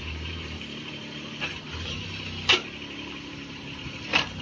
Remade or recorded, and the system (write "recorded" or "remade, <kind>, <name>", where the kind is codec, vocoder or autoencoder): remade, vocoder, BigVGAN v2